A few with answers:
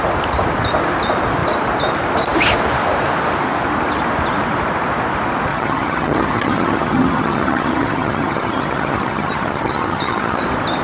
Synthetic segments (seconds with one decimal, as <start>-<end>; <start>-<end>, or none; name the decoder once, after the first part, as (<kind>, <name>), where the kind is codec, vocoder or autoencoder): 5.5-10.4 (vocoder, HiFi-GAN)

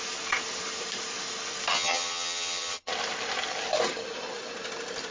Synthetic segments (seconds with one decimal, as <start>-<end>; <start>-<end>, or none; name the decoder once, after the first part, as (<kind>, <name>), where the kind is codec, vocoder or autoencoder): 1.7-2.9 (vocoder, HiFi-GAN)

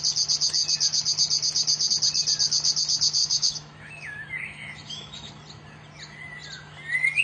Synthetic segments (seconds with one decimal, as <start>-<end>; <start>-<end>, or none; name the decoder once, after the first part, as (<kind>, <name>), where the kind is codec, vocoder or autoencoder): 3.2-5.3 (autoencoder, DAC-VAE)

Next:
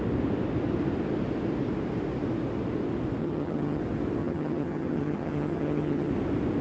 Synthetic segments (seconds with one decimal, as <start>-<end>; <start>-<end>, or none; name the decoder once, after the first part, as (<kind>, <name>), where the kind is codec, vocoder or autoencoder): 3.2-3.8 (vocoder, HiFi-GAN); 4.2-6.1

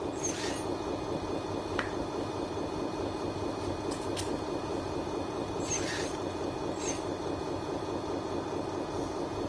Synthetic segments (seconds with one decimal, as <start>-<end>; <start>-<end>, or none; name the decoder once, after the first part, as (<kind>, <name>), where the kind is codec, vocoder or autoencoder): none

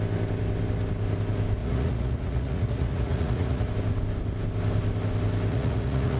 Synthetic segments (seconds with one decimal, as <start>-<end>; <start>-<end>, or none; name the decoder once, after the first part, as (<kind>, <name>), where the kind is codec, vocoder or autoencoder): 1.6-3.7 (vocoder, Vocos); 5.5-6.2

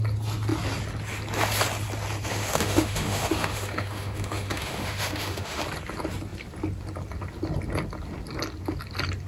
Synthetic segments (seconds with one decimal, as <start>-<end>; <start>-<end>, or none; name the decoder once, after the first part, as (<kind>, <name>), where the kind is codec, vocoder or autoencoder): 2.3-5.6 (autoencoder, DAC-VAE)

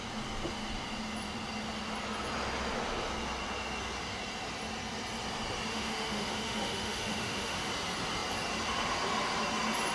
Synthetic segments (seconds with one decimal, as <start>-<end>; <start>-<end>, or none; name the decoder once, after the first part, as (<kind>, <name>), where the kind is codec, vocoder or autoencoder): 5.7-7.7 (autoencoder, DAC-VAE)